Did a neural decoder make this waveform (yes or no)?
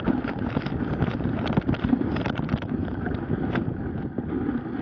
no